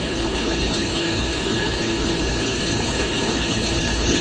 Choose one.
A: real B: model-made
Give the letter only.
B